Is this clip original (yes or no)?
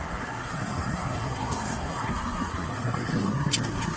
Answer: no